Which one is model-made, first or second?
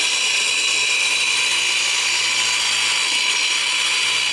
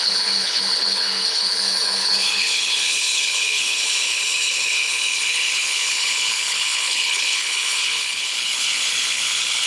second